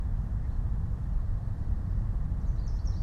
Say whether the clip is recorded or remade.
remade